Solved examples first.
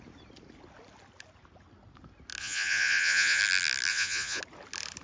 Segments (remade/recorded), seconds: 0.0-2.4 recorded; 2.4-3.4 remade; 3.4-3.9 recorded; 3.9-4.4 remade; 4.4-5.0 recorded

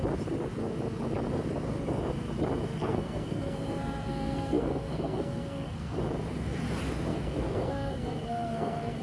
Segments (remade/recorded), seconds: 0.0-2.8 recorded; 2.8-6.0 remade; 6.0-7.1 recorded; 7.1-9.0 remade

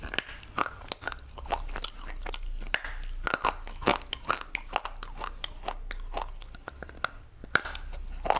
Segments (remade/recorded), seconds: 0.0-8.4 recorded

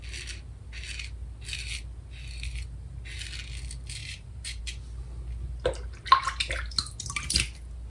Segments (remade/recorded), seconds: 0.0-4.0 recorded; 4.0-4.6 remade; 4.6-7.9 recorded

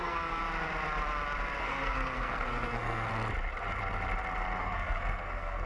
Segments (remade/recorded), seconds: 0.0-0.4 remade; 0.4-1.6 recorded; 1.6-3.1 remade; 3.1-4.6 recorded; 4.6-5.7 remade